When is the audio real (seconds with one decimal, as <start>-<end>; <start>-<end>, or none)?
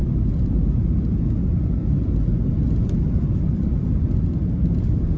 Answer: 1.2-1.8